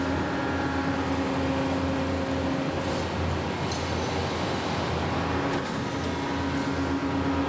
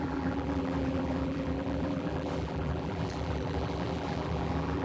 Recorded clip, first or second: first